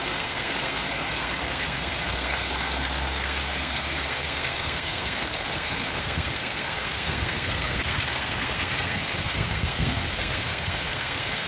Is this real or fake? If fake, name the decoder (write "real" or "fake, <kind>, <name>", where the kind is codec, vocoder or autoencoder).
fake, codec, SNAC